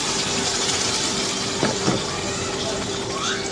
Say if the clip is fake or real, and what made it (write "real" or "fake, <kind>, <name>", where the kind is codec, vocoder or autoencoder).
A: real